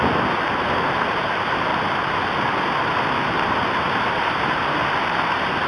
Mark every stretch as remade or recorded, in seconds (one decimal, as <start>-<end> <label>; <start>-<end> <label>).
0.0-1.7 remade; 1.7-3.7 recorded; 3.7-5.7 remade